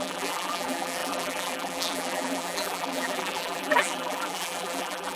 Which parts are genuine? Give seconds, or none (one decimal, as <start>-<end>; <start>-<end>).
none